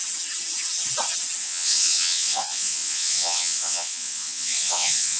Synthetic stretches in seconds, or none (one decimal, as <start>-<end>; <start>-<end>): 1.4-5.2